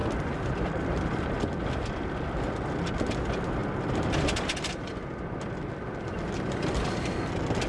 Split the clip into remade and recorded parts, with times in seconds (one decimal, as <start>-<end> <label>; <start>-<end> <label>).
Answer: 0.0-2.9 remade; 2.9-3.6 recorded; 3.6-6.9 remade; 6.9-7.7 recorded